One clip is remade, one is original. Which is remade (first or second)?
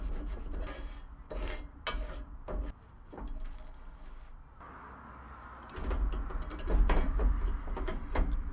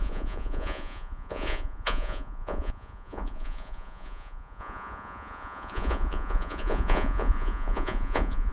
second